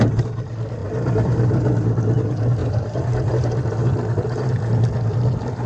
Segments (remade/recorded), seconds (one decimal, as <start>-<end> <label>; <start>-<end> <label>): 0.0-0.8 recorded; 0.8-1.5 remade; 1.5-2.6 recorded; 2.6-3.3 remade; 3.3-5.7 recorded